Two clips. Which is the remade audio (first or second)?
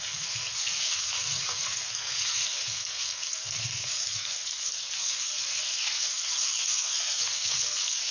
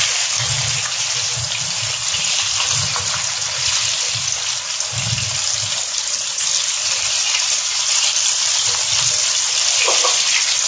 first